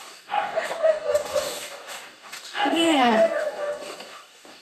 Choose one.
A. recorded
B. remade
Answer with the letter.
B